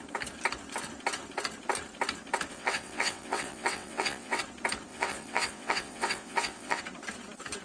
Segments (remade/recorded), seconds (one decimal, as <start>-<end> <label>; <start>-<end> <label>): 0.0-2.5 recorded; 2.5-4.4 remade; 4.4-4.9 recorded; 4.9-6.8 remade; 6.8-7.6 recorded